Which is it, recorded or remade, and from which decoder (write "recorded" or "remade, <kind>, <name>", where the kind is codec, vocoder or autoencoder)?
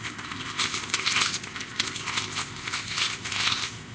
remade, codec, ZipCodec